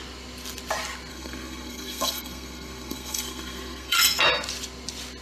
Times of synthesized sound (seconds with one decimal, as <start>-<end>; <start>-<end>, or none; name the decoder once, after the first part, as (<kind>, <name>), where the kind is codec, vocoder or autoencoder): 1.1-4.2 (codec, SNAC)